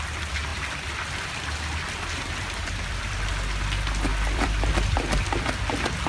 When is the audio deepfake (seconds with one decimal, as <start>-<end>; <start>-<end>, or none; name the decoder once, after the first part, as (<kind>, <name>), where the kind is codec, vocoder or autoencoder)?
0.5-3.2 (vocoder, BigVGAN v2); 4.1-4.7